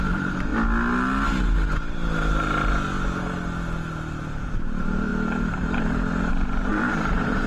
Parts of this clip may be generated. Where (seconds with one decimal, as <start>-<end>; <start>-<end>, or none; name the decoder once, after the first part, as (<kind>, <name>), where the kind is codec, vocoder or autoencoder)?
0.0-0.5 (vocoder, BigVGAN v2); 4.6-7.5